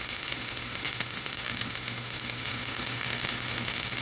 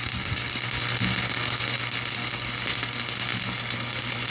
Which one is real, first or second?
second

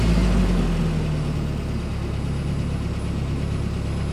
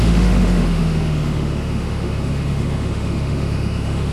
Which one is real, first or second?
first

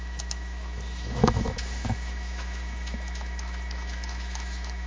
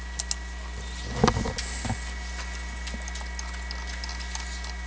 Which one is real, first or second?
second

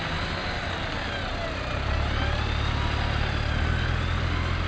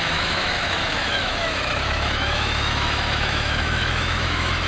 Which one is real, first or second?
first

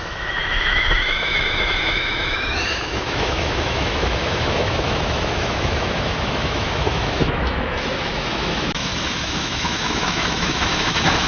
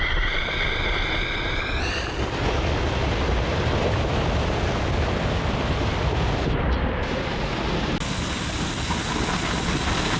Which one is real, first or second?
second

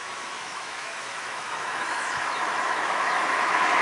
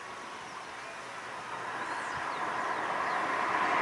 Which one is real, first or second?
second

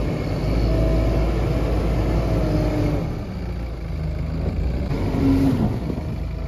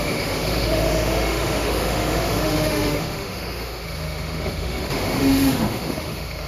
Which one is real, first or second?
first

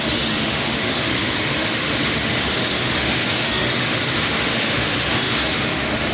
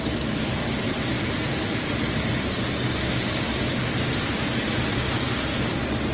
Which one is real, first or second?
second